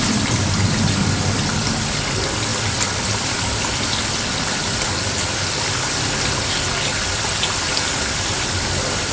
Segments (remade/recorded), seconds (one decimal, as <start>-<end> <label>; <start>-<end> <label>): 0.0-9.1 recorded